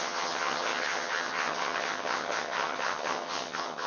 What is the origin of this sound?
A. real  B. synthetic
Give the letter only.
B